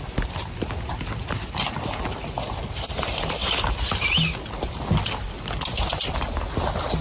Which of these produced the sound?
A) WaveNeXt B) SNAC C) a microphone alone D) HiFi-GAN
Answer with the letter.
C